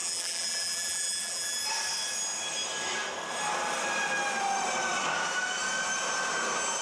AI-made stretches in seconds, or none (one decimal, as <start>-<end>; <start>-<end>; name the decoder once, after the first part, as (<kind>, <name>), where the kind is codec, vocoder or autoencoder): 0.0-1.6 (vocoder, BigVGAN v2)